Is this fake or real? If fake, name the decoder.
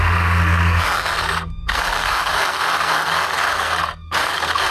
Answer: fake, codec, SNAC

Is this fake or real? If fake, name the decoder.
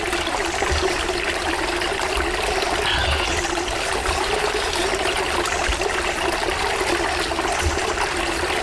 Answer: real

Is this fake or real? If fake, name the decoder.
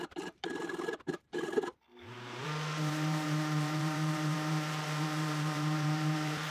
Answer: fake, vocoder, BigVGAN v2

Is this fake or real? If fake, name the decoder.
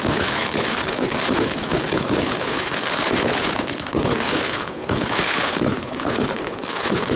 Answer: fake, codec, HILCodec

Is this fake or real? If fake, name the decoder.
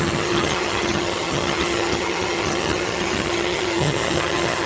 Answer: fake, vocoder, HiFi-GAN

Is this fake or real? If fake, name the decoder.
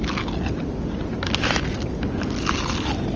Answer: real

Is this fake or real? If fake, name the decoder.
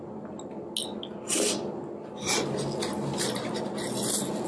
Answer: real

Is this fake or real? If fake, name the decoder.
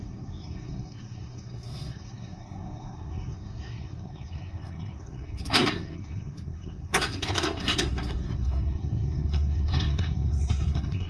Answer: fake, codec, SNAC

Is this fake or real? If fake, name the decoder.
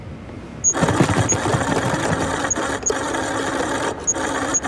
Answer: real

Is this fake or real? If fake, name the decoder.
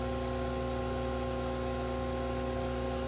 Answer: real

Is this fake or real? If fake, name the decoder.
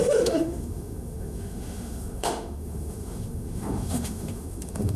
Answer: fake, autoencoder, DAC-VAE